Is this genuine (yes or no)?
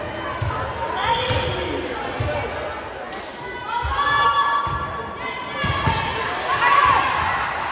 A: yes